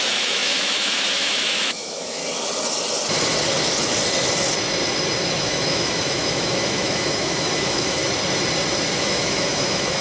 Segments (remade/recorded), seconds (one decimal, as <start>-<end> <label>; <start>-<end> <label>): 0.0-2.2 remade; 2.2-5.4 recorded; 5.4-8.0 remade; 8.0-9.0 recorded; 9.0-10.0 remade